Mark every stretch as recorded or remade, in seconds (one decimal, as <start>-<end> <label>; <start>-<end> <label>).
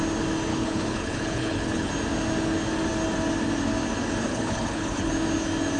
0.0-0.5 recorded; 0.5-1.9 remade; 1.9-4.2 recorded; 4.2-5.1 remade; 5.1-5.8 recorded